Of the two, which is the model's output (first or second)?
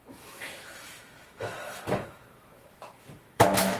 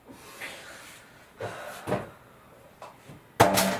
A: first